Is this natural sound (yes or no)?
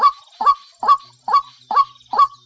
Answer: yes